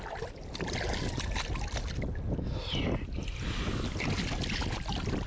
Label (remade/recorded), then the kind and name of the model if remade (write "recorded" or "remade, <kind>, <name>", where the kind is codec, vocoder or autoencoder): recorded